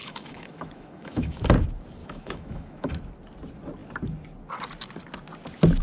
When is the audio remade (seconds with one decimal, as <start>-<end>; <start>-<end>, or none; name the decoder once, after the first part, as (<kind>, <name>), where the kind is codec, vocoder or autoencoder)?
0.0-1.4 (autoencoder, DAC-VAE); 2.0-2.9